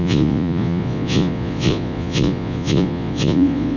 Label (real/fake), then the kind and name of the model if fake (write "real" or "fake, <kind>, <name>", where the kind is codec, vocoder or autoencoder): fake, vocoder, Vocos